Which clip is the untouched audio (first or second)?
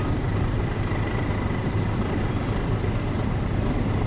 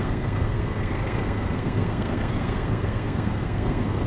first